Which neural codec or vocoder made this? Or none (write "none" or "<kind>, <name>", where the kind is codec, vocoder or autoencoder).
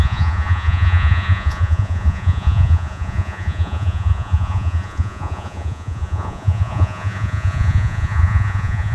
vocoder, Vocos